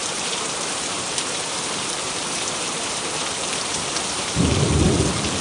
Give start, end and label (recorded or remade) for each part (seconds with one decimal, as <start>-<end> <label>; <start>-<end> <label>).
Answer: 0.0-3.2 remade; 3.2-3.7 recorded; 3.7-4.4 remade; 4.4-5.4 recorded